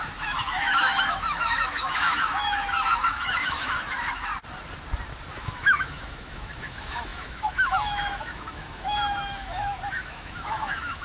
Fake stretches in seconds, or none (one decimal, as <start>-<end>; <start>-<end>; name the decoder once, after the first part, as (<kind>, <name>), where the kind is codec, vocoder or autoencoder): 0.0-4.3 (autoencoder, DAC-VAE); 5.3-11.0